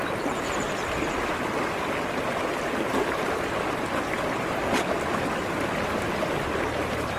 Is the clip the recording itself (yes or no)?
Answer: yes